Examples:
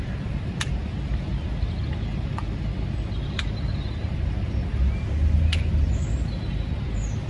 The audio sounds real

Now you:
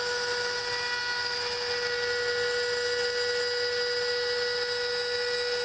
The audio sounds real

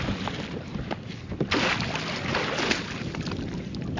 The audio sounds real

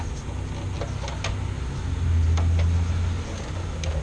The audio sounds real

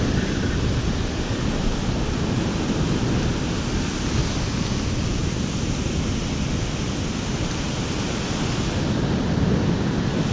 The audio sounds real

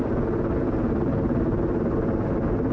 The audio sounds real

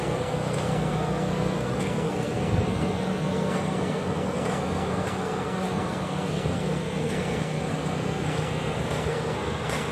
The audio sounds fake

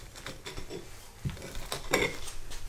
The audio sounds real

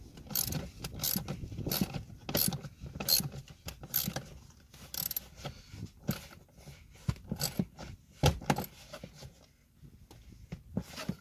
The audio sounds real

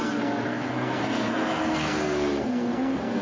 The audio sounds fake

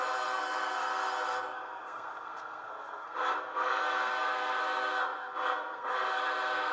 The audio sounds fake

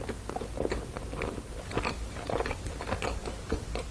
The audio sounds real